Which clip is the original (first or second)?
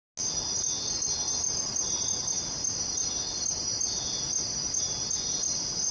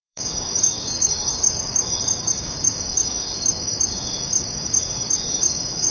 first